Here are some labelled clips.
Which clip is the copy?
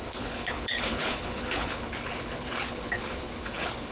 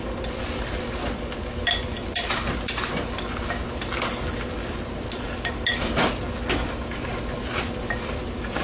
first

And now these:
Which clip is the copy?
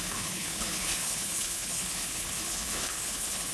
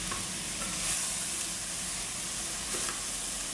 first